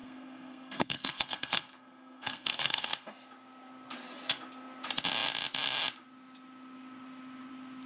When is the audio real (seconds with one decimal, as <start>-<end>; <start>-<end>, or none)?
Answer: 3.1-7.9